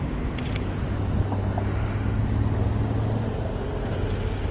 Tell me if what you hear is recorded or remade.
recorded